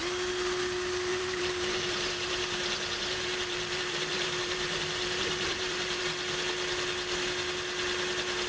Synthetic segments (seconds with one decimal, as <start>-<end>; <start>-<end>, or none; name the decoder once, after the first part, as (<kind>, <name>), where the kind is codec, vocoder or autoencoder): 1.1-6.0 (vocoder, BigVGAN v2)

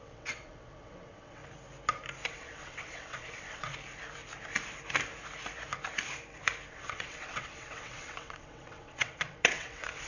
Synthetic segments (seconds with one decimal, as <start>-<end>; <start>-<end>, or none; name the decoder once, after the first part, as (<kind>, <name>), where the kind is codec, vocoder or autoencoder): 0.0-1.4 (vocoder, WaveNeXt); 2.3-3.7; 6.7-10.1

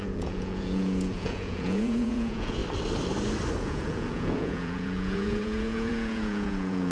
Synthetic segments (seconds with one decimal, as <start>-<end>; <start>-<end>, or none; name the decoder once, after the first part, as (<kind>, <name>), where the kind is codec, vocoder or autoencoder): 0.0-2.6 (vocoder, Vocos); 3.6-6.9

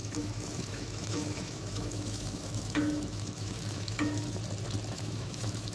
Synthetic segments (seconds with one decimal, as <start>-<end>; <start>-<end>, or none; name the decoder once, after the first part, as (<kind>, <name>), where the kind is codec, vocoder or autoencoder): 0.0-4.4 (autoencoder, DAC-VAE); 4.9-5.7

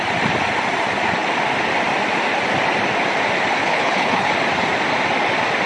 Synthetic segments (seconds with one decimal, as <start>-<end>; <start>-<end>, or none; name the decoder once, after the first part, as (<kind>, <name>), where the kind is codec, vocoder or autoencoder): 3.6-4.3 (codec, HILCodec)

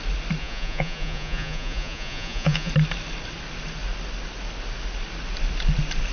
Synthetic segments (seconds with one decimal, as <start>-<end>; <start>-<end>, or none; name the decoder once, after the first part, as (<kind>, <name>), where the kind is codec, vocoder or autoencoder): 0.4-2.7 (vocoder, Vocos)